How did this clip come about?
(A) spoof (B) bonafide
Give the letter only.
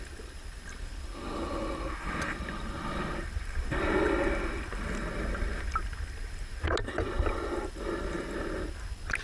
B